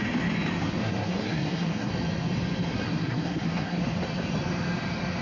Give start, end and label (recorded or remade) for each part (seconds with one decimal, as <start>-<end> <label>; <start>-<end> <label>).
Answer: 0.0-0.8 recorded; 0.8-1.9 remade; 1.9-2.7 recorded; 2.7-3.8 remade; 3.8-5.2 recorded